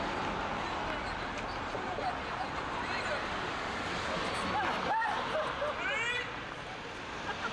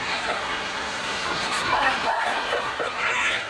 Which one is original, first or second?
first